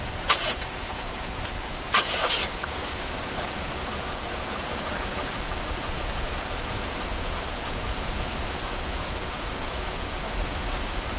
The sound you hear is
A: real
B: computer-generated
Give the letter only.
B